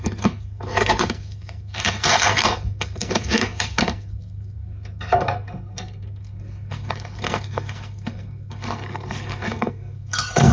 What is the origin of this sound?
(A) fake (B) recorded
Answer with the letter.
A